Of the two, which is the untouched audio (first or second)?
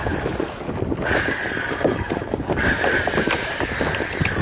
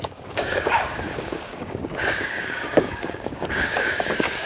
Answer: first